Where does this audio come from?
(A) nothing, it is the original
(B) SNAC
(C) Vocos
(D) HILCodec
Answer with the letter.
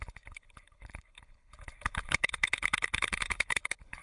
D